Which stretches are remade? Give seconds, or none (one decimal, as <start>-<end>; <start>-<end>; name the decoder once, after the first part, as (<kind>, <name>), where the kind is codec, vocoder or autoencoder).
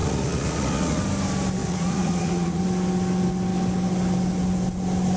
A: 0.0-1.0 (vocoder, Vocos); 1.6-2.6